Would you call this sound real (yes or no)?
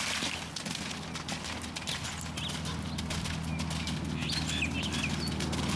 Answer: yes